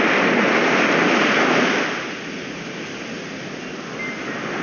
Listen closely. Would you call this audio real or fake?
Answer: real